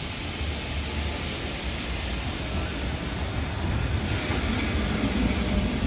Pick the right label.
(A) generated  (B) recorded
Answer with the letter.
B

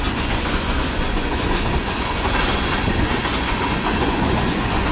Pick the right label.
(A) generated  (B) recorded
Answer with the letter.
A